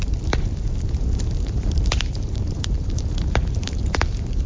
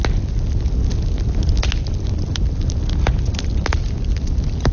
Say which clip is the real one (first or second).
second